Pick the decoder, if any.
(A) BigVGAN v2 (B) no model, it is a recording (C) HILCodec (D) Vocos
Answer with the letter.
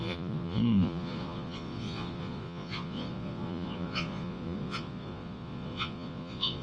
D